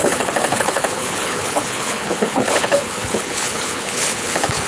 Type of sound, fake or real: fake